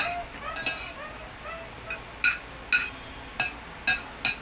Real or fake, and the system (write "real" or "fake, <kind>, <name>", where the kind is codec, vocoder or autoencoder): real